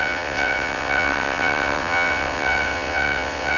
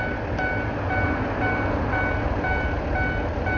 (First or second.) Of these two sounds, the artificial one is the first